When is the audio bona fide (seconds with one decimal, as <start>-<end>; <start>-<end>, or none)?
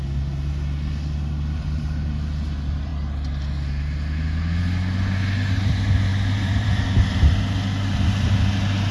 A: 0.0-6.1; 6.8-8.9